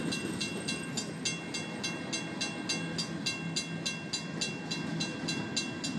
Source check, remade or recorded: recorded